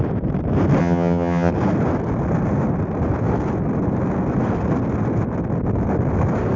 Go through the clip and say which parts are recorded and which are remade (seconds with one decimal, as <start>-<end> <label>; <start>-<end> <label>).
0.0-0.8 recorded; 0.8-1.5 remade; 1.5-6.6 recorded